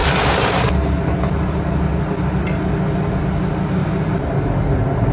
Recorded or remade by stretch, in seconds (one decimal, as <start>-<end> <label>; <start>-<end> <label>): 0.0-5.1 recorded